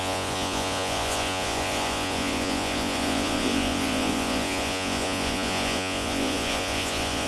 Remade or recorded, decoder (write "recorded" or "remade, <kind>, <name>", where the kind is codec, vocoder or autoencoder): remade, vocoder, Vocos